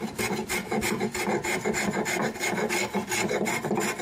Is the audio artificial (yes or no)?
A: no